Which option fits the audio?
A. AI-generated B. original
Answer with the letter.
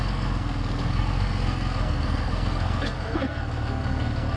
A